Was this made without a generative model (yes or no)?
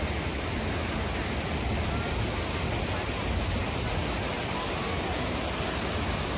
yes